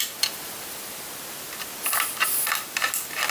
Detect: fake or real real